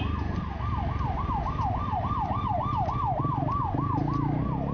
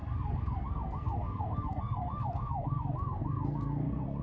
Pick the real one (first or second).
first